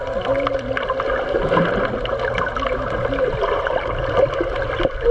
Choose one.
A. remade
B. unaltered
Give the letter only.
B